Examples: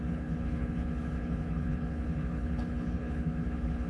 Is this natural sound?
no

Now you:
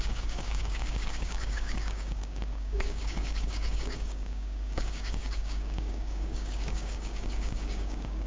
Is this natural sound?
no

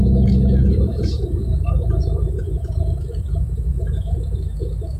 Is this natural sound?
no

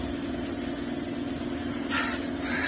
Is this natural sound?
yes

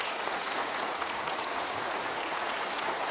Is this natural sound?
no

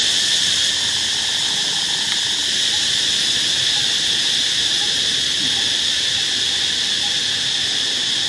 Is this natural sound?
yes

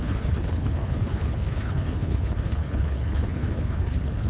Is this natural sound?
no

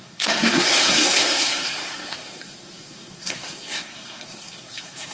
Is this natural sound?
no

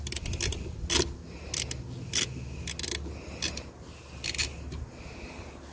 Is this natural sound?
yes